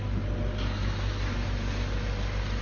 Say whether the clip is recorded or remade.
recorded